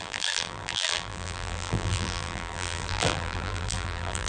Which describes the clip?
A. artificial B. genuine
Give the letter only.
A